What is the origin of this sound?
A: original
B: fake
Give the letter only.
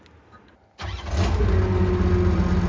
A